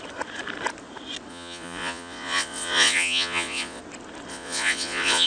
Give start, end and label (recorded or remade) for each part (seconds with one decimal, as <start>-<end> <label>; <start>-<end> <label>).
0.0-1.3 recorded; 1.3-3.8 remade; 3.8-4.3 recorded; 4.3-5.3 remade